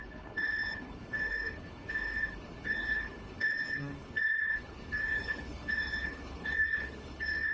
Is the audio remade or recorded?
remade